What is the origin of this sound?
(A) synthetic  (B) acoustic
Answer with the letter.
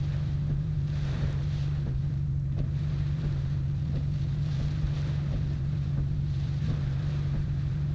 A